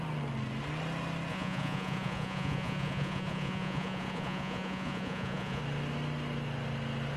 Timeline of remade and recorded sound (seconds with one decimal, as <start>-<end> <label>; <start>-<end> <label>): 0.0-1.3 recorded; 1.3-5.6 remade; 5.6-7.2 recorded